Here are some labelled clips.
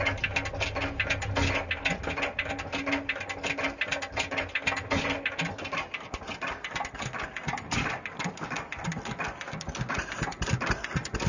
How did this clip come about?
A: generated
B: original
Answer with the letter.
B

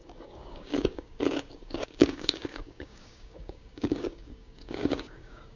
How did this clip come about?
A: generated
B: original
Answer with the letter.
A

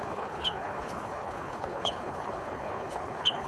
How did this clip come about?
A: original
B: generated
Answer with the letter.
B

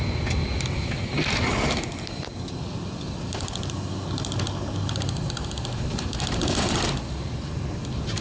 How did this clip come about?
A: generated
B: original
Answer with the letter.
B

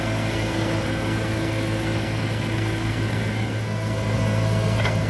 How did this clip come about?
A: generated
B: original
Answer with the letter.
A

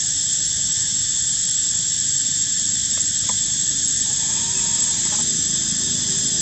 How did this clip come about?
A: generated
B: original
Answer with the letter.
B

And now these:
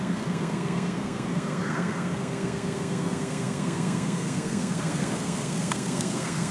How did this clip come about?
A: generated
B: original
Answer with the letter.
A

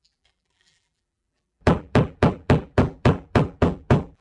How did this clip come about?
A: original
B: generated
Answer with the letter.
B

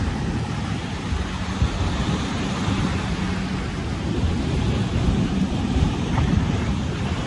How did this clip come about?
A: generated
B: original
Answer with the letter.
A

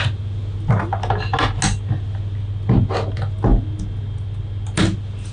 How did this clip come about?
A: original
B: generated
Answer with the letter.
A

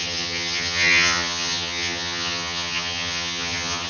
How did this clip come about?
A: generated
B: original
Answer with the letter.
A